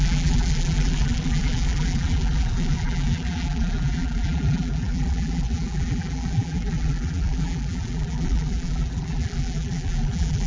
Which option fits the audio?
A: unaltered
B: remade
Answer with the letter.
B